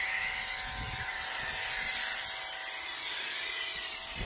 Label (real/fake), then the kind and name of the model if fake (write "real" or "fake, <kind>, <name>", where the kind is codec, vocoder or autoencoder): real